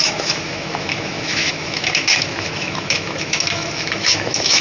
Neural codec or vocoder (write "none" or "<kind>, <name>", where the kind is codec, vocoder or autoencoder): autoencoder, DAC-VAE